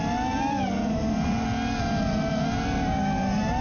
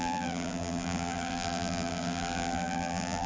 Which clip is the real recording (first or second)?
first